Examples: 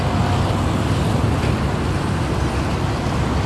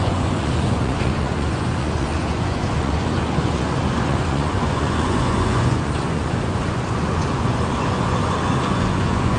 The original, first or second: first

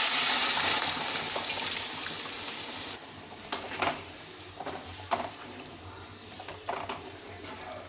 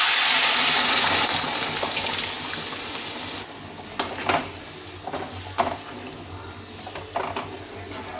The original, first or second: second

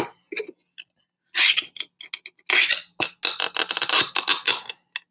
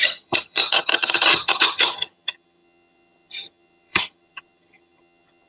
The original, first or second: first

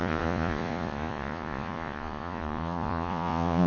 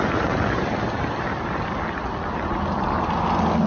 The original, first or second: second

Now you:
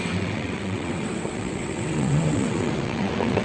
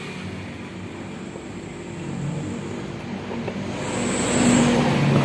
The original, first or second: second